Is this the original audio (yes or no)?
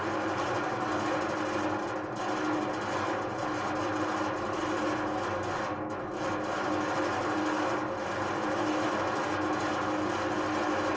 yes